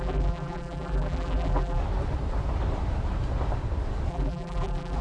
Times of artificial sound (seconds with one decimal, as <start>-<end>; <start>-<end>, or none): 0.0-1.8; 4.1-5.0